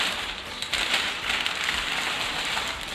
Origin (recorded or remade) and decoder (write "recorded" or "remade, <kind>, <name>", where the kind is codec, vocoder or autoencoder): remade, vocoder, BigVGAN v2